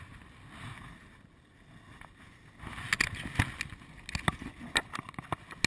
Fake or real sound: real